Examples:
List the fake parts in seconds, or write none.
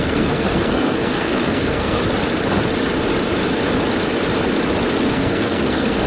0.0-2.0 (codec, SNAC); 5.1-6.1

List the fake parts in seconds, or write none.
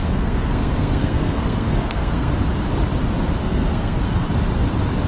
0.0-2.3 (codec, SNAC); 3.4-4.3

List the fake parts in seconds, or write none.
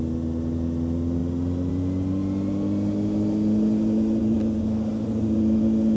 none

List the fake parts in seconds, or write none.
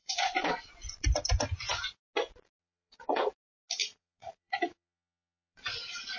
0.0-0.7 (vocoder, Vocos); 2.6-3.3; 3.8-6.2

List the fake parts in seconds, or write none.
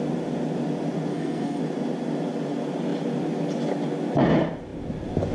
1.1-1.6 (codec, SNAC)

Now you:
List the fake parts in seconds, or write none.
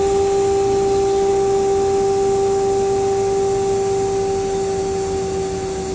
none